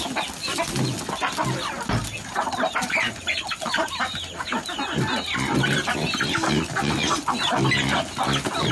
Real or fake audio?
real